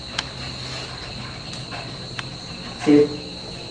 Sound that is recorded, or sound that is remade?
recorded